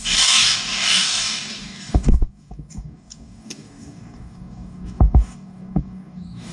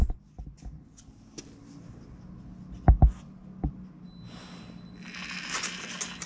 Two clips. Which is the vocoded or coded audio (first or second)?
first